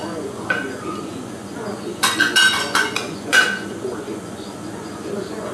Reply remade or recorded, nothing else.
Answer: remade